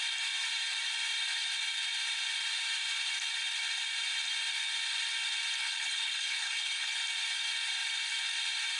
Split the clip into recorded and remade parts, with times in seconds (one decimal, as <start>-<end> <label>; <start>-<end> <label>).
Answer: 0.0-5.6 recorded; 5.6-7.0 remade; 7.0-8.8 recorded